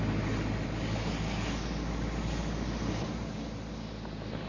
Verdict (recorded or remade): recorded